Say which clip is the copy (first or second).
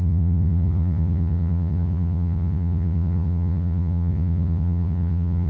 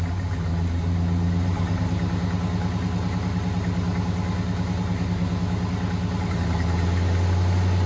first